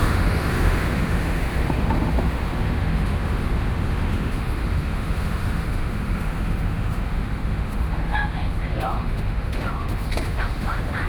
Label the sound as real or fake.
fake